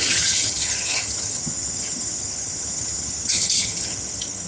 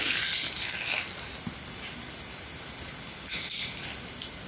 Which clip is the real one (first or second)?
second